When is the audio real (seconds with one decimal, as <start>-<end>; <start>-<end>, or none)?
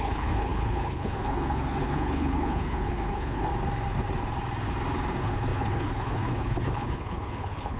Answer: 3.5-5.1